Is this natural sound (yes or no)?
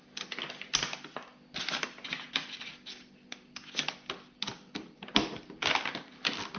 yes